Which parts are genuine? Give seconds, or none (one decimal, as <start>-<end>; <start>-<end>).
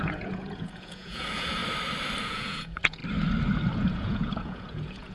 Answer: 1.6-2.2; 3.0-3.7